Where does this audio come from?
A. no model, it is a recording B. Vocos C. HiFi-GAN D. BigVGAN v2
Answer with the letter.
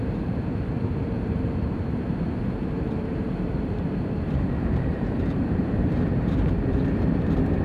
D